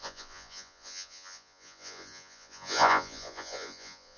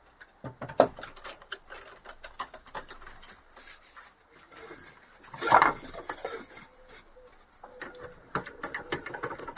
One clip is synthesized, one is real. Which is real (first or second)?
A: second